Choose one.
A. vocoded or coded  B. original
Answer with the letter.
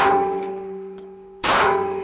A